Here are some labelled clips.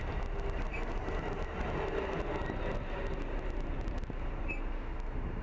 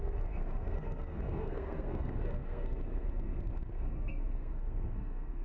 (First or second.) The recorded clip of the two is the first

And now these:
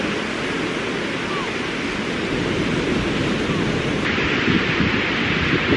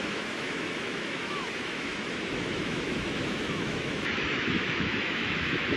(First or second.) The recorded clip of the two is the first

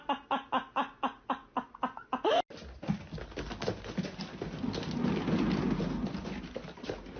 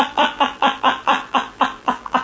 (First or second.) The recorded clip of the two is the first